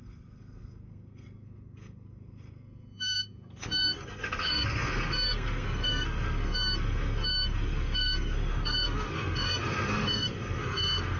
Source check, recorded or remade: remade